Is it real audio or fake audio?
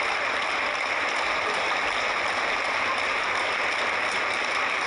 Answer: fake